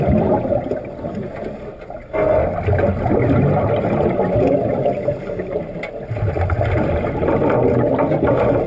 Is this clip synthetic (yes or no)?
no